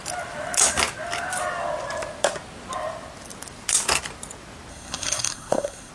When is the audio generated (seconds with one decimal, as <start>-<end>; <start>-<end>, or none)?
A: 4.7-5.9